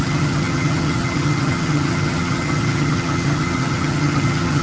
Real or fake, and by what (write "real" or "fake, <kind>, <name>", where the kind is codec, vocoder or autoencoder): fake, vocoder, HiFi-GAN